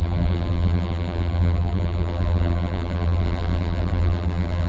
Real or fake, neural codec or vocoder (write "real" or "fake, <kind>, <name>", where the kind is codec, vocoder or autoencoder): fake, vocoder, BigVGAN v2